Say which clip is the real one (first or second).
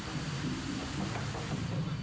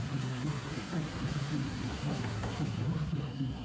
first